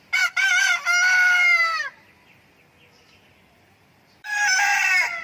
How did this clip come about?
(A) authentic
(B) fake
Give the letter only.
B